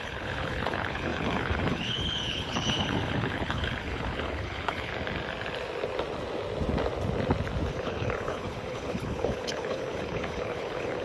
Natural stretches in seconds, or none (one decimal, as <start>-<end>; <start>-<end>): 4.9-7.7